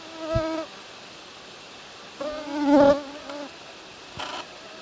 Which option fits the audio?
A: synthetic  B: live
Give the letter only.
B